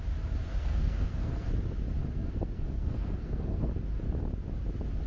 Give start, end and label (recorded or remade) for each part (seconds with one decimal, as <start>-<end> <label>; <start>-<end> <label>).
0.0-0.5 recorded; 0.5-1.5 remade; 1.5-2.0 recorded; 2.0-3.7 remade; 3.7-5.1 recorded